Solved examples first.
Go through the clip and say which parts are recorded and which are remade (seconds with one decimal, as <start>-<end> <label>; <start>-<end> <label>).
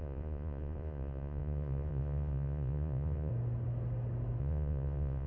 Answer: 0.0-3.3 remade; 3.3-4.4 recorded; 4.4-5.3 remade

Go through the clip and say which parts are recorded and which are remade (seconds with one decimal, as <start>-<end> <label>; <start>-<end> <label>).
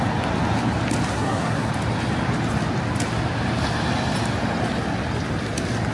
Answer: 0.0-1.1 recorded; 1.1-1.7 remade; 1.7-5.9 recorded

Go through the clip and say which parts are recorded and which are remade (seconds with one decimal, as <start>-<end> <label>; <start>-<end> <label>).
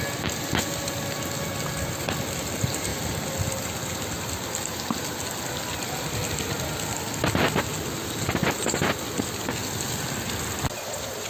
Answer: 0.0-11.3 recorded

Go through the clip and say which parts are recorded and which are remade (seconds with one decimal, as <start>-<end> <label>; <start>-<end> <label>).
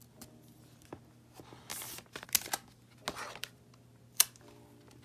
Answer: 0.0-5.0 recorded